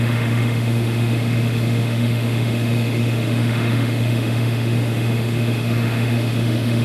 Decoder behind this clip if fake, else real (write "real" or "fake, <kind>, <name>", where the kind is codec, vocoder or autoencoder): fake, autoencoder, DAC-VAE